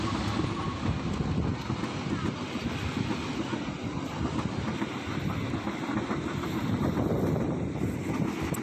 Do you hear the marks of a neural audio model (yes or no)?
no